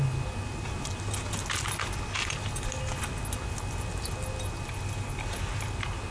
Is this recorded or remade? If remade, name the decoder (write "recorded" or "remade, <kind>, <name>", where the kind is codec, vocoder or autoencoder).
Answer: recorded